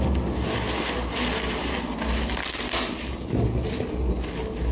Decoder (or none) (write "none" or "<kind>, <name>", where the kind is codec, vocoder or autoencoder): none